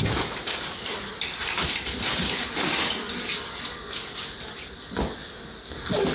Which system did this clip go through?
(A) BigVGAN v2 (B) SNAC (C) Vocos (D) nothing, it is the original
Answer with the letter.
D